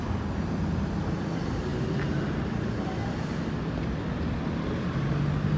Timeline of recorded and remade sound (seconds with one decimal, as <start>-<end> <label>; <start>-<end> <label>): 0.0-5.6 recorded